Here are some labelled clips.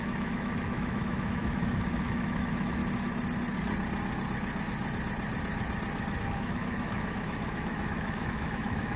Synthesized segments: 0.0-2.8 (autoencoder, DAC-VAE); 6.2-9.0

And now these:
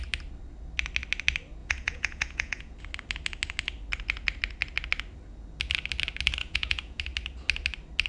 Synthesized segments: 1.6-2.8 (vocoder, Vocos); 6.4-7.0

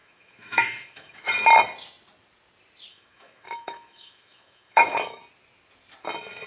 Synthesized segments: 0.0-1.3 (autoencoder, DAC-VAE); 2.9-5.2

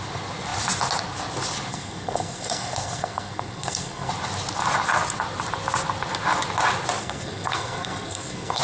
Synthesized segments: 1.7-4.1 (codec, SNAC); 7.0-8.6

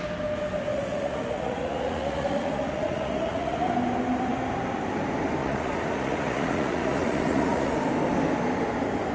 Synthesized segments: 0.7-3.7 (vocoder, Vocos); 5.4-7.7

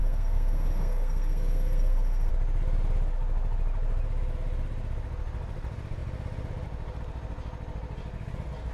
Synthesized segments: 0.0-2.3 (codec, SNAC)

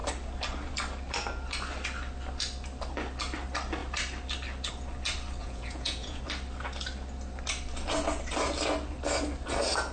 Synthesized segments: 5.4-6.2 (vocoder, Vocos)

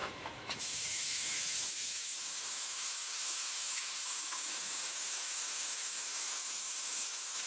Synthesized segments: 0.0-7.5 (autoencoder, DAC-VAE)